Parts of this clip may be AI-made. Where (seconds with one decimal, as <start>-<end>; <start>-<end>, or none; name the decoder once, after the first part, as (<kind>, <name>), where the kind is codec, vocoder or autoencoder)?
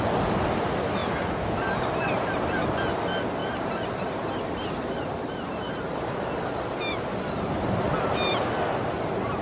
3.4-5.9 (vocoder, BigVGAN v2)